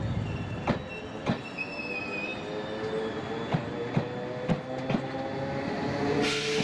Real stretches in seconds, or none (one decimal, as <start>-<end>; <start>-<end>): 0.0-6.6